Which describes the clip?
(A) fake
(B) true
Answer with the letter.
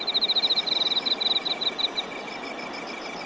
B